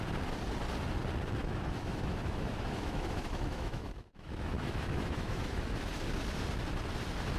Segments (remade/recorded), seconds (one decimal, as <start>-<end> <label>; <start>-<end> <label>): 0.0-1.4 recorded; 1.4-5.8 remade; 5.8-7.4 recorded